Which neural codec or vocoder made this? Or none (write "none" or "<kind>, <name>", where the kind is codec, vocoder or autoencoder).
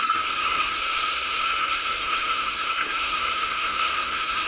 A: codec, SNAC